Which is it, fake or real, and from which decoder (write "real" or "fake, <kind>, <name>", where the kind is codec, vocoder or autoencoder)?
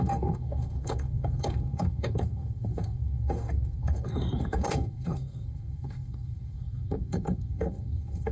fake, codec, SNAC